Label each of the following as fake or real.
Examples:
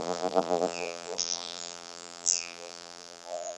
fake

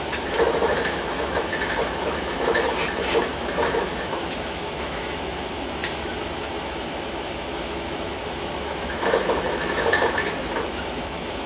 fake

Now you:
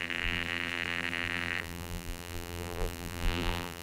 fake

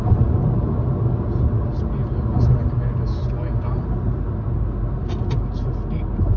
real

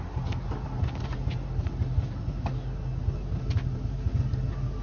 real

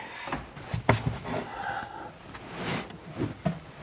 real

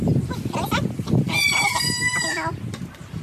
real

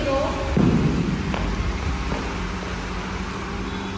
real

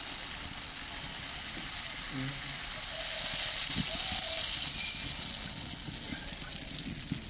real